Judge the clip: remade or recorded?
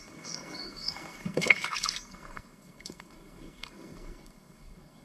remade